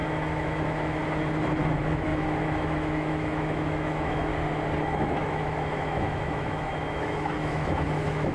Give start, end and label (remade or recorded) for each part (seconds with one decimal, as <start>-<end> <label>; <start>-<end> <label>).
0.0-1.0 remade; 1.0-1.6 recorded; 1.6-4.3 remade; 4.3-4.8 recorded; 4.8-8.3 remade